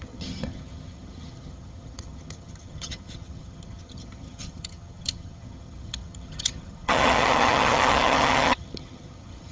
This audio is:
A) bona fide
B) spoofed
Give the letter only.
B